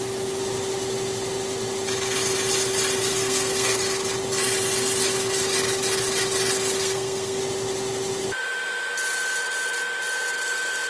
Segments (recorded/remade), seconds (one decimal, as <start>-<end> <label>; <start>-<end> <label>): 0.0-3.1 recorded; 3.1-3.8 remade; 3.8-6.8 recorded; 6.8-7.4 remade; 7.4-10.9 recorded